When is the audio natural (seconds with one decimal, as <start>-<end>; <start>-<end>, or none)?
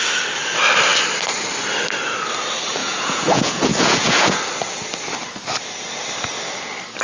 0.0-2.8; 4.4-7.0